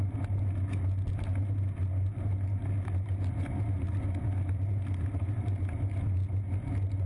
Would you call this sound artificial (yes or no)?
no